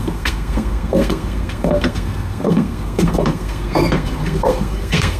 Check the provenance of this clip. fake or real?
fake